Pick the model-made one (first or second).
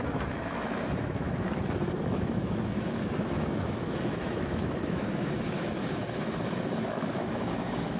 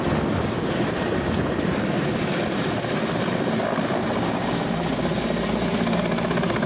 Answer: first